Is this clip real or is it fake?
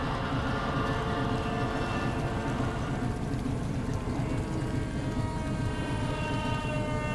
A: real